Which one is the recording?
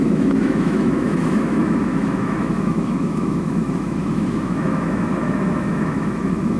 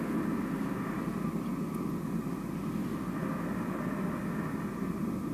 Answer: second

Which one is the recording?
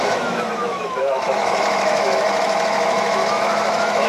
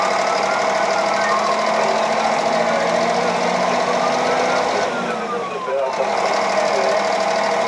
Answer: second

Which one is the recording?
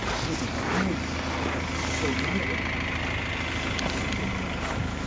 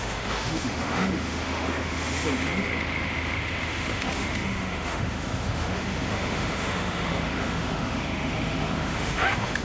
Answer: first